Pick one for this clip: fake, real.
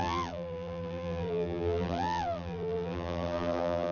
fake